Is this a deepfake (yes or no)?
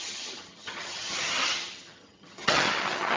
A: yes